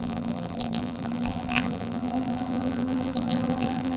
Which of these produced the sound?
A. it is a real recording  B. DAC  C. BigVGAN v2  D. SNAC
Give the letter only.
C